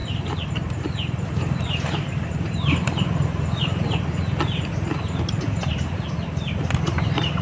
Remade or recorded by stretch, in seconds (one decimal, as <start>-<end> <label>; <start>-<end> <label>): 0.0-4.4 remade; 4.4-5.7 recorded; 5.7-6.7 remade; 6.7-7.4 recorded